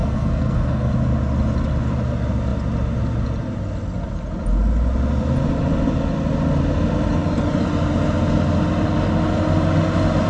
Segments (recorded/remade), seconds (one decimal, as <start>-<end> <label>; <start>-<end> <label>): 0.0-0.9 remade; 0.9-10.3 recorded